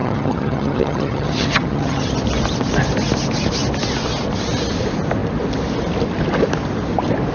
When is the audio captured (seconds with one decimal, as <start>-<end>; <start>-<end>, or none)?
2.1-7.3